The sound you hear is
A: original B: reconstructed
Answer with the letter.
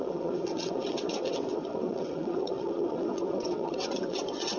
B